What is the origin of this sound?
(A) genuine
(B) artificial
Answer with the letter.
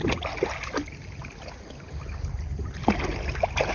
A